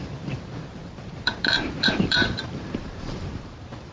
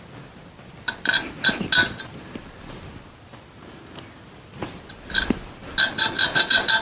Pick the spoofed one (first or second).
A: first